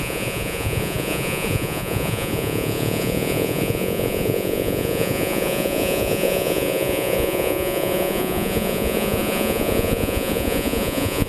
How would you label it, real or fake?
fake